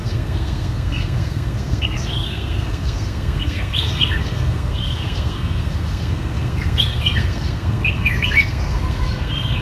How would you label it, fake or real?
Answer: fake